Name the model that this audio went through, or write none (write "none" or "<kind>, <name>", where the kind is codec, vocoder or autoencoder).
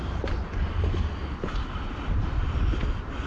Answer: none